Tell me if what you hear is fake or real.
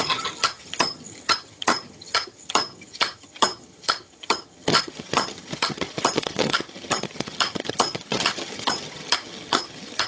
fake